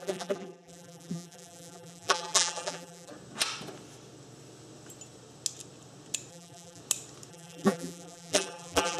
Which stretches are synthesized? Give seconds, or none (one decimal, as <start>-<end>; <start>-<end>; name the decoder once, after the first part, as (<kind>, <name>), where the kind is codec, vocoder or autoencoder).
0.0-3.1 (vocoder, BigVGAN v2); 6.3-6.8; 7.3-9.0

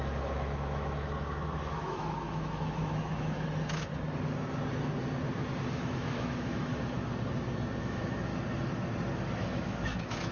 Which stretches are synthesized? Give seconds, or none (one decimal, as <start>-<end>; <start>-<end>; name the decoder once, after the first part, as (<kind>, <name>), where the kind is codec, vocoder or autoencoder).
0.0-3.9 (autoencoder, DAC-VAE); 5.7-6.7; 7.8-8.3; 9.4-10.3

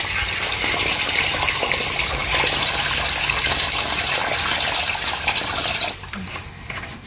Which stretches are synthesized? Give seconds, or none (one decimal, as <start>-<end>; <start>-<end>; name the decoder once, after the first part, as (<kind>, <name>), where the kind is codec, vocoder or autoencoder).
none

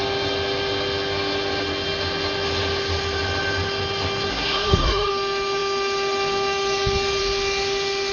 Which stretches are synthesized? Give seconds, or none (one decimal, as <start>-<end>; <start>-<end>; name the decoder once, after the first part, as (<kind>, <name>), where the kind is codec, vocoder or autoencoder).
4.3-5.1 (codec, SNAC)